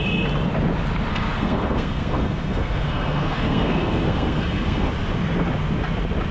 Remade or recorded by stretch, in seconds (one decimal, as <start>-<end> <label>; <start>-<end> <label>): 0.0-1.1 recorded; 1.1-4.9 remade; 4.9-6.3 recorded